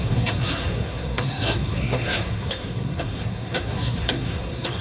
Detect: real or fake fake